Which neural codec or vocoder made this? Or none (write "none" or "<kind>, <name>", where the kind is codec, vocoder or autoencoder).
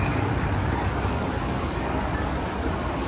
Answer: codec, DAC